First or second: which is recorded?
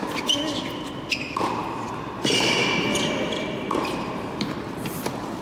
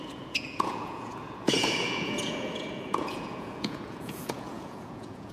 first